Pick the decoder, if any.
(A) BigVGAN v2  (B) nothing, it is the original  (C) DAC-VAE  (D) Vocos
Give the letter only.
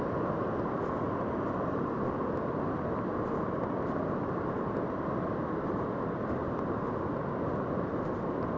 B